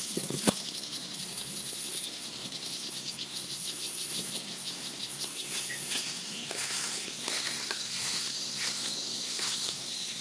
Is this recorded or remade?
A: remade